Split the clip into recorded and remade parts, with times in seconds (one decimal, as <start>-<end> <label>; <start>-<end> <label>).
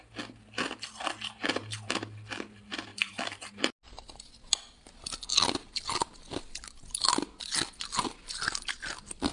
0.0-9.3 recorded